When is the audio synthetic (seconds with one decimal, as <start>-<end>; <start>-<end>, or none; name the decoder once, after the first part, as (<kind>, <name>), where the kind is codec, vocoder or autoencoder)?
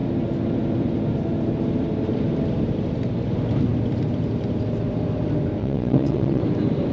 5.6-6.4 (vocoder, WaveNeXt)